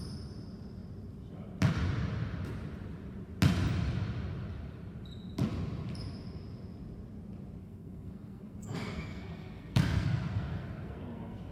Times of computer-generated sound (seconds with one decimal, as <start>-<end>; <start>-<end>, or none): 7.6-11.5